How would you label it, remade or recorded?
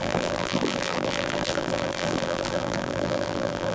remade